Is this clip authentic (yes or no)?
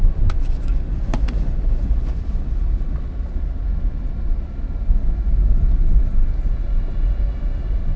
yes